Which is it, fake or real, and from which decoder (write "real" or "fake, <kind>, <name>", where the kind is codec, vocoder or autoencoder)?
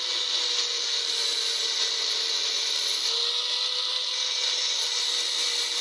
real